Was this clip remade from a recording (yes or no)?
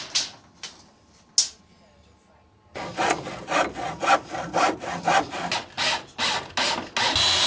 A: no